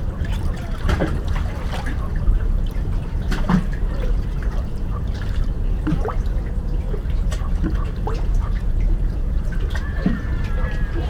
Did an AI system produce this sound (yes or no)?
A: yes